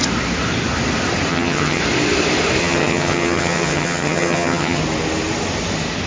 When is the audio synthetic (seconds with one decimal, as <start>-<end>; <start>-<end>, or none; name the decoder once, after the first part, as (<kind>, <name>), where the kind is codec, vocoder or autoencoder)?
1.3-1.8 (vocoder, HiFi-GAN); 2.6-4.8